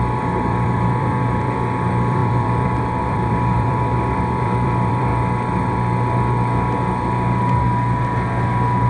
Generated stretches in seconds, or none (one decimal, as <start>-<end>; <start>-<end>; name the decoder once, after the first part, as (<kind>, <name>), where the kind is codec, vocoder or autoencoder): 0.0-5.1 (vocoder, BigVGAN v2)